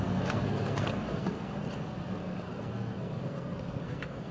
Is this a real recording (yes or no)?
no